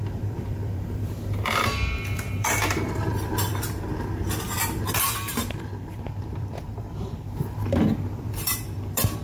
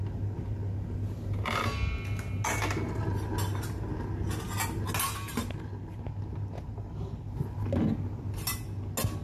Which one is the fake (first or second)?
first